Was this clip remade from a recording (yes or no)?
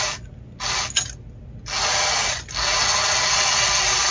no